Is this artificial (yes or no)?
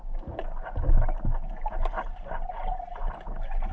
no